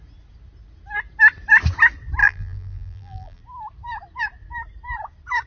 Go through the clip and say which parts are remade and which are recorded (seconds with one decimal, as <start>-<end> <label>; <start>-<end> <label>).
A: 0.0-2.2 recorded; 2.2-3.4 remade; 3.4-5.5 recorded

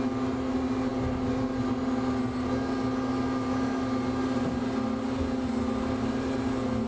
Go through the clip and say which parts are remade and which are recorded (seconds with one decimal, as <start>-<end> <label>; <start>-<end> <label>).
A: 0.0-6.9 recorded

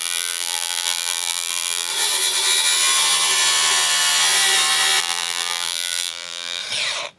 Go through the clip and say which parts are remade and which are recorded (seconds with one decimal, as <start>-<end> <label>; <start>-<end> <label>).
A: 0.0-1.9 remade; 1.9-5.0 recorded; 5.0-6.6 remade; 6.6-7.2 recorded